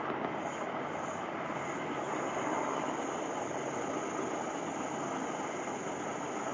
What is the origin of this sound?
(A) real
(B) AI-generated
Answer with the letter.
A